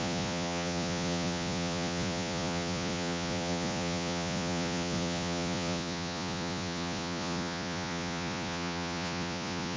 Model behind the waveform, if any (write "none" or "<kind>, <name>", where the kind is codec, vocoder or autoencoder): vocoder, Vocos